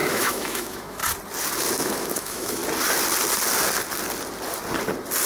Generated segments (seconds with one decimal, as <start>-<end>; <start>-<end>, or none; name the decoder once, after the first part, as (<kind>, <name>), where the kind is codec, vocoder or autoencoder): 0.0-1.0 (autoencoder, DAC-VAE); 1.7-2.6